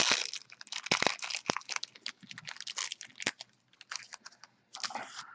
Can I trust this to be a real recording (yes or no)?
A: yes